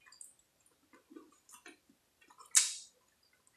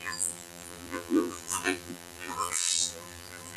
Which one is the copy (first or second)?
second